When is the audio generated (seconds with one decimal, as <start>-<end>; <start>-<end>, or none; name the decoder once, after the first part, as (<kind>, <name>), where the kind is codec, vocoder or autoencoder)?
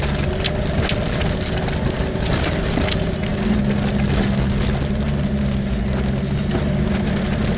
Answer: none